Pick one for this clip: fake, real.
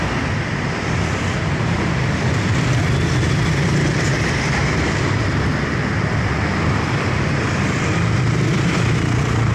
fake